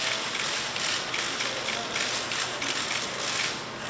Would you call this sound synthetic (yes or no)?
no